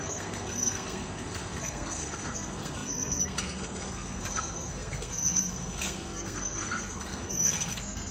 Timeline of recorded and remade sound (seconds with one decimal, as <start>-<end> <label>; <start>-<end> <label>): 0.0-8.1 remade